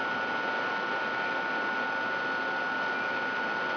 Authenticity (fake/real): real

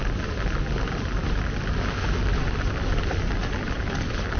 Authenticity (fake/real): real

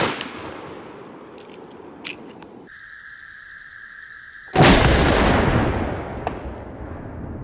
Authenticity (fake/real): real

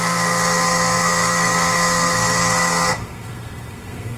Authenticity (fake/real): fake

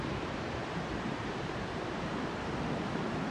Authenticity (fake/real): real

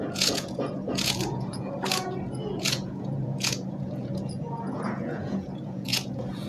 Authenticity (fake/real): fake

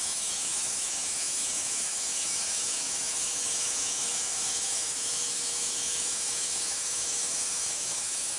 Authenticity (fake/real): fake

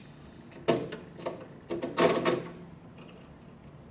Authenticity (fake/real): real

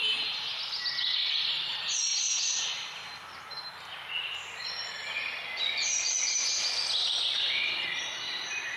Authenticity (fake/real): real